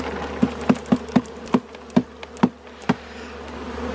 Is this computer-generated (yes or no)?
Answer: no